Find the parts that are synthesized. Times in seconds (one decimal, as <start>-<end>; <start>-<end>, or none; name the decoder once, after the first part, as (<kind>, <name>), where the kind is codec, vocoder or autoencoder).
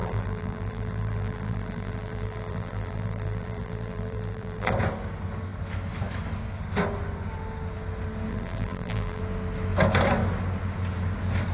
0.0-4.7 (vocoder, BigVGAN v2); 8.3-9.2